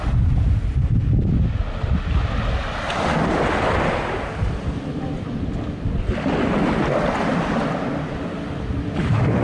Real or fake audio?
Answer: real